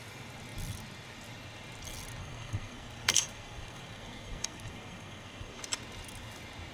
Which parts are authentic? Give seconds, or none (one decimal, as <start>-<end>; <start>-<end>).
0.0-2.2; 5.6-6.7